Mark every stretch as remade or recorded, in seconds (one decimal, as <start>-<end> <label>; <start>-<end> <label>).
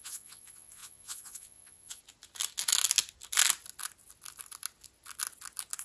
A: 0.0-2.0 remade; 2.0-5.8 recorded